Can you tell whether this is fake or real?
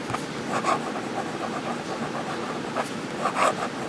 real